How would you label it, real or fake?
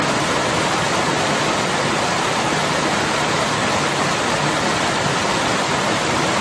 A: real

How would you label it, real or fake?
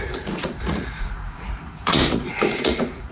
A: fake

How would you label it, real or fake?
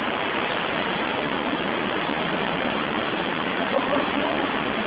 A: fake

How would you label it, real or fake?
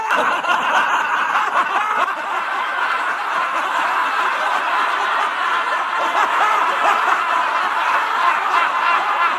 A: fake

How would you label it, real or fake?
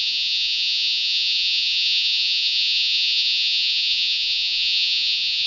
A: fake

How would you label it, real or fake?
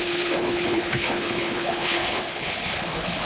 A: fake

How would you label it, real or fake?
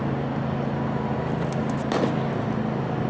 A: real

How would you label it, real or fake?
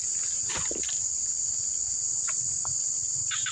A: real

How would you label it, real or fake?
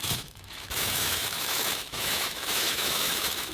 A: fake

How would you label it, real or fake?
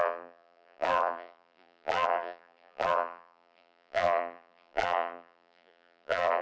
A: fake